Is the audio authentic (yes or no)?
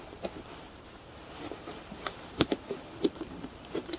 no